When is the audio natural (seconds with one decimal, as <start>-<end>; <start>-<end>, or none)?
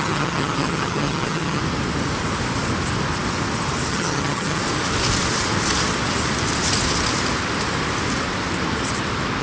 1.6-3.9; 4.6-9.4